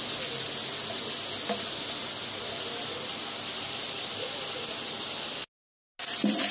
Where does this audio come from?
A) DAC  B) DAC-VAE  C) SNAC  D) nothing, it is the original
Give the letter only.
D